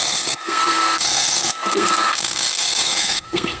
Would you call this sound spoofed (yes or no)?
yes